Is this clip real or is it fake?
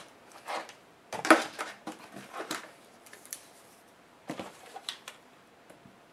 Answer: fake